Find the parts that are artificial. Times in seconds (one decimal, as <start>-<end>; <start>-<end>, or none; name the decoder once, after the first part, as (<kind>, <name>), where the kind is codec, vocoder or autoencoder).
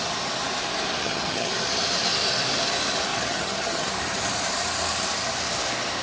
1.0-1.5 (vocoder, HiFi-GAN); 3.1-3.9